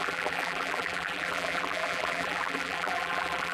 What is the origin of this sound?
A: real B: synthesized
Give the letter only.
B